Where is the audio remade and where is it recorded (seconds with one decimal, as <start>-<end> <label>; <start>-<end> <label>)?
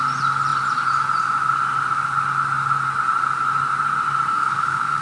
0.0-4.3 recorded; 4.3-5.0 remade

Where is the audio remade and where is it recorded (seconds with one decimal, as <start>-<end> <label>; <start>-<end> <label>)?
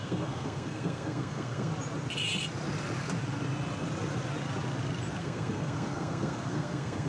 0.0-1.7 remade; 1.7-5.2 recorded; 5.2-7.1 remade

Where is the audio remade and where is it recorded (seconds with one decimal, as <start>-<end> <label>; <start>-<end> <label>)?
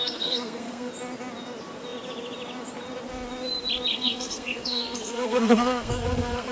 0.0-0.9 remade; 0.9-3.9 recorded; 3.9-6.5 remade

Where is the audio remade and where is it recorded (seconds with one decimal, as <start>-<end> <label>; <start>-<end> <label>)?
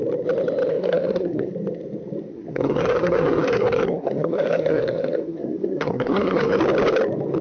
0.0-0.7 recorded; 0.7-1.5 remade; 1.5-2.3 recorded; 2.3-6.6 remade; 6.6-7.4 recorded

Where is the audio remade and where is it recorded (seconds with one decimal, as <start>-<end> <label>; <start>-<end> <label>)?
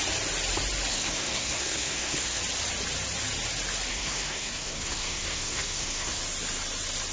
0.0-0.9 recorded; 0.9-2.4 remade; 2.4-3.9 recorded; 3.9-6.2 remade; 6.2-7.1 recorded